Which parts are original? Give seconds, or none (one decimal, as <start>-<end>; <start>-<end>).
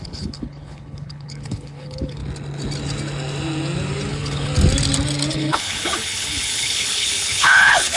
2.2-4.1; 4.5-5.3